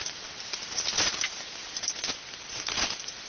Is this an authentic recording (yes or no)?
yes